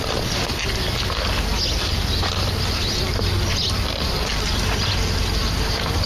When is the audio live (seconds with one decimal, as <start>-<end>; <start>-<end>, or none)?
0.0-6.1